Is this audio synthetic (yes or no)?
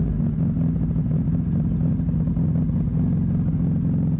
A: no